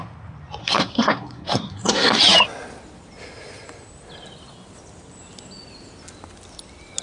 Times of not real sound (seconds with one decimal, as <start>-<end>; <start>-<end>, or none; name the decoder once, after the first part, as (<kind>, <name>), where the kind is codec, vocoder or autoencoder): 0.6-2.2 (codec, SNAC)